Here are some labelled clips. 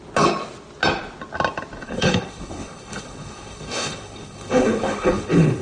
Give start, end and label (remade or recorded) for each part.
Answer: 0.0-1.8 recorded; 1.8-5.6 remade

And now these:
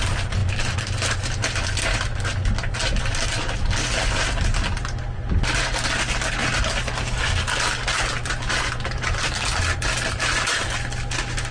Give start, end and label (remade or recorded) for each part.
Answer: 0.0-11.5 recorded

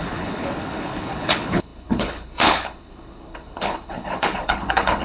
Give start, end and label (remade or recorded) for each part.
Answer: 0.0-5.0 remade

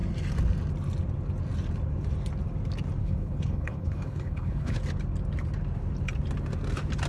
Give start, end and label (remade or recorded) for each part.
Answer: 0.0-3.0 recorded; 3.0-4.8 remade; 4.8-7.1 recorded